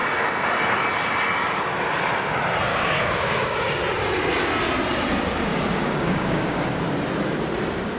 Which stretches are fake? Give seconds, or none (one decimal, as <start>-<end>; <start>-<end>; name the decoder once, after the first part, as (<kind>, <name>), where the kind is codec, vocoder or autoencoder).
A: 2.7-3.8 (codec, DAC); 5.5-6.9